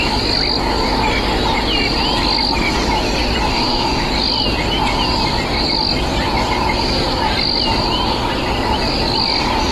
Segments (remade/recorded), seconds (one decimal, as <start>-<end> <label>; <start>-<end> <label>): 0.0-3.5 recorded; 3.5-4.1 remade; 4.1-9.7 recorded